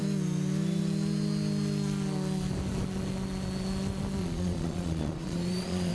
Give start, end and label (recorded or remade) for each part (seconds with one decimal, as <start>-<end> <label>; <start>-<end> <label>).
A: 0.0-4.2 recorded; 4.2-5.9 remade